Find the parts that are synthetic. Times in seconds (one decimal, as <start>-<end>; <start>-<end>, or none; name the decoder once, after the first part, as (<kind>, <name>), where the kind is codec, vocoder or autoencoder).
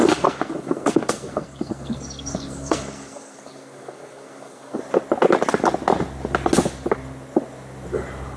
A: 0.0-4.8 (codec, SNAC)